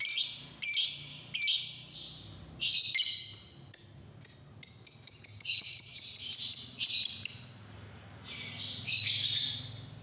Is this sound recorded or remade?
recorded